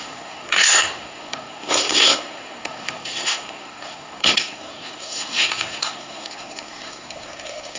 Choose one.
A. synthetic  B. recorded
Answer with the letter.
A